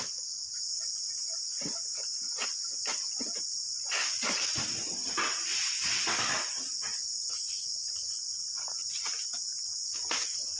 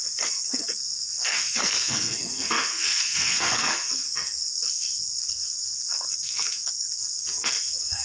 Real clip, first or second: first